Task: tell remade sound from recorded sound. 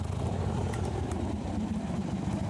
remade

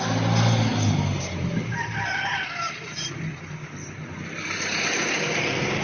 recorded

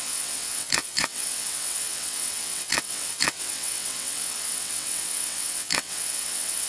remade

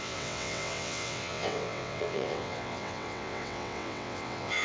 remade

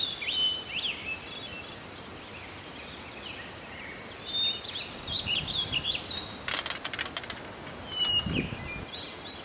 recorded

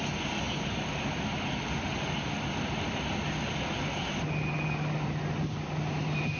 recorded